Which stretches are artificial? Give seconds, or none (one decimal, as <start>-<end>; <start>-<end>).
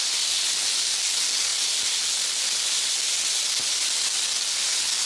none